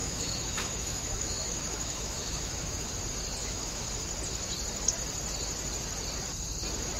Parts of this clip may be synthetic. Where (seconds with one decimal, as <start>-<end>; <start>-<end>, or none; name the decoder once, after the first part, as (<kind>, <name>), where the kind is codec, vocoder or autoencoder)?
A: 0.0-2.9 (autoencoder, DAC-VAE); 3.4-3.9